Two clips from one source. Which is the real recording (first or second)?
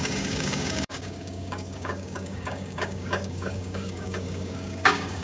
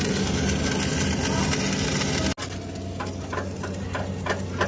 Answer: second